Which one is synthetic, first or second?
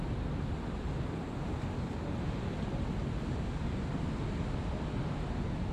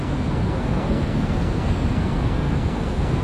second